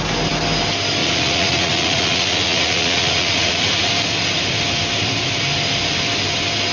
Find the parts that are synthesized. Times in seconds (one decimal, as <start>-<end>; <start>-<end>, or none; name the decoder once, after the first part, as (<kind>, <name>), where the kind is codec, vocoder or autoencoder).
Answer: 1.0-3.9 (vocoder, Vocos)